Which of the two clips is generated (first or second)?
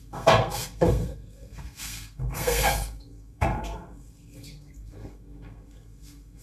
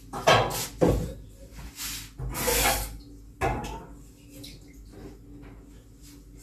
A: first